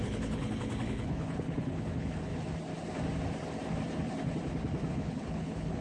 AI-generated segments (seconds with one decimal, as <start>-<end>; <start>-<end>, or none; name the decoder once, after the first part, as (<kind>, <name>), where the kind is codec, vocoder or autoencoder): 0.0-2.3 (codec, HILCodec); 4.9-5.8